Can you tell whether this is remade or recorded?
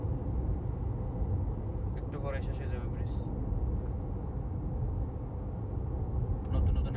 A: recorded